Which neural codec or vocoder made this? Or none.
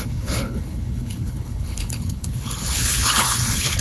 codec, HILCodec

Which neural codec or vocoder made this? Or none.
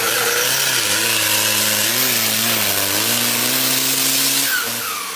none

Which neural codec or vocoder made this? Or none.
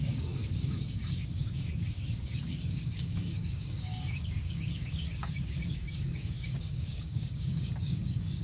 codec, DAC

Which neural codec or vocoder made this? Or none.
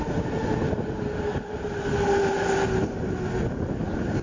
none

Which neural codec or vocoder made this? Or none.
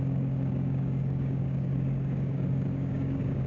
codec, DAC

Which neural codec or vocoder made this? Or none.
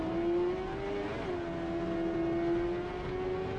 none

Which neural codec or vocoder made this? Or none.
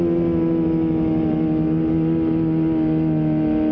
none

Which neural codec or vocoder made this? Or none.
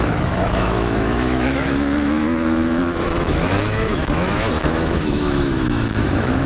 autoencoder, DAC-VAE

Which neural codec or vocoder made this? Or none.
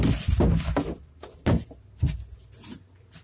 none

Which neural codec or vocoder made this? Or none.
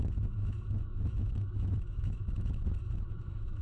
autoencoder, DAC-VAE